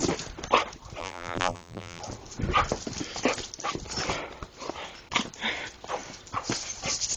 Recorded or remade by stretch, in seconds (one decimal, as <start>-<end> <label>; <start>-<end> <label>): 0.0-1.0 recorded; 1.0-2.0 remade; 2.0-7.2 recorded